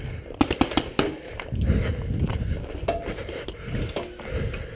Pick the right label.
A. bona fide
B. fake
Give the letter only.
A